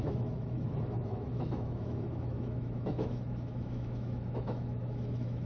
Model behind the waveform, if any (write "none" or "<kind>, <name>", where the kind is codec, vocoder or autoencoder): autoencoder, DAC-VAE